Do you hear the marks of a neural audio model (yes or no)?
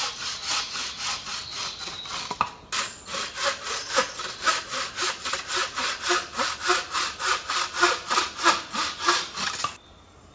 no